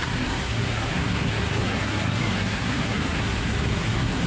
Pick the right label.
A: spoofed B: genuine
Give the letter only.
A